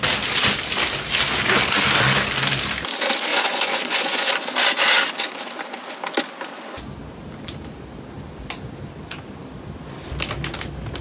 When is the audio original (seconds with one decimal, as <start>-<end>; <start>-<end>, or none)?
0.0-3.3; 4.3-11.0